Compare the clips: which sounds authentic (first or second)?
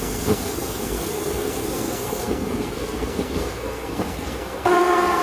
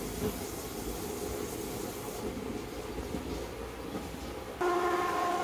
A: second